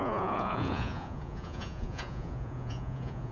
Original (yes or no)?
no